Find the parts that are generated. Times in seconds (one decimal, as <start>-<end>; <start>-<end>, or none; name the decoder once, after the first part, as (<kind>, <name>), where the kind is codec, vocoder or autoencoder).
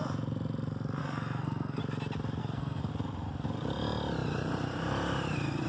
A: 1.0-1.8 (codec, SNAC); 2.4-2.9